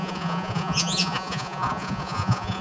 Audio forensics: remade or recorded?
remade